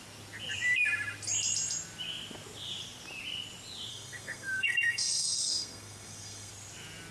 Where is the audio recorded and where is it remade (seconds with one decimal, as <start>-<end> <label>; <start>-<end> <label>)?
0.0-3.9 recorded; 3.9-6.5 remade; 6.5-7.1 recorded